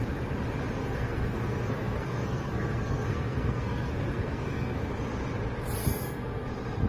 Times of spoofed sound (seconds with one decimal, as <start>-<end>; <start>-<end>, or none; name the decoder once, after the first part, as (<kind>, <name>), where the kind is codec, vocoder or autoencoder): 0.8-4.9 (codec, SNAC); 5.8-6.5